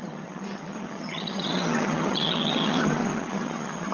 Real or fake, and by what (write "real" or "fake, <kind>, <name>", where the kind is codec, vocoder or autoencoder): fake, vocoder, HiFi-GAN